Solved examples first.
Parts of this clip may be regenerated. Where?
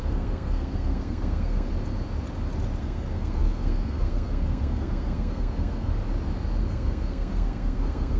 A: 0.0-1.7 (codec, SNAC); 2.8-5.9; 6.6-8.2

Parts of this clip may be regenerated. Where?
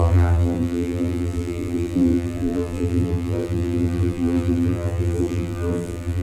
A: 0.0-6.2 (vocoder, BigVGAN v2)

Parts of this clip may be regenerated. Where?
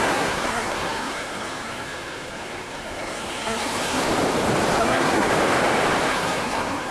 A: 0.0-4.0 (codec, SNAC); 4.8-5.3; 6.1-6.9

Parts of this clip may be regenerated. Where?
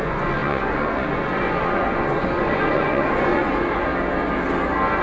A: 0.0-3.9 (vocoder, Vocos)